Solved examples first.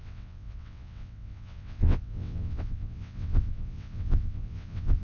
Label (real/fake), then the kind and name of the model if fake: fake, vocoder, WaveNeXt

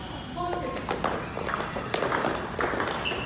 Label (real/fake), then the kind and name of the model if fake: real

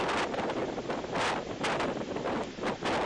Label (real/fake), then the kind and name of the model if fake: real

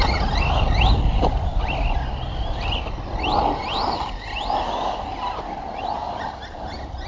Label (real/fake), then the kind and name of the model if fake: real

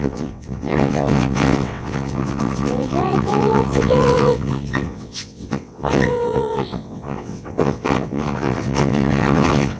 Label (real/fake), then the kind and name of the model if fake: fake, vocoder, WaveNeXt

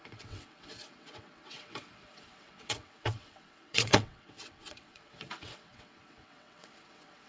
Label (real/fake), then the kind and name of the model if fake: fake, vocoder, WaveNeXt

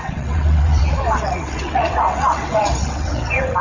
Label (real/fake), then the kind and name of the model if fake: fake, vocoder, WaveNeXt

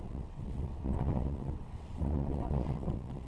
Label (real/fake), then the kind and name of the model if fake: fake, vocoder, WaveNeXt